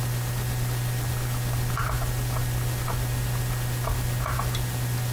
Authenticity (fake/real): real